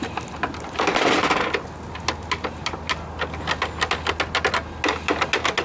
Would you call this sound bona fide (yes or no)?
yes